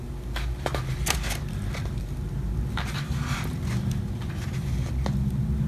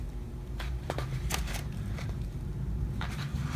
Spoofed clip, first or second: second